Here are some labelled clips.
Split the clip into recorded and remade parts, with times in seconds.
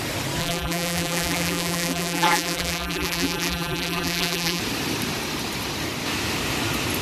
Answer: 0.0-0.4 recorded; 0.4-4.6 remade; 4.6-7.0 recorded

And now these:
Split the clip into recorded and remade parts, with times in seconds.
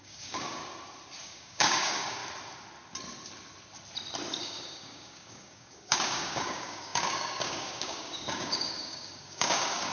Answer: 0.0-0.6 remade; 0.6-1.2 recorded; 1.2-2.2 remade; 2.2-4.4 recorded; 4.4-9.9 remade